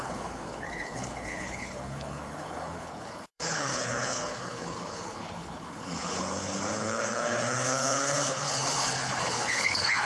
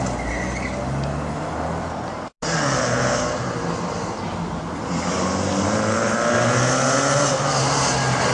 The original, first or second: second